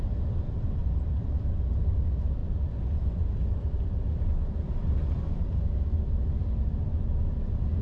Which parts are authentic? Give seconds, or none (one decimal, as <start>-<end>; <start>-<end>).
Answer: 0.0-0.8; 1.8-7.8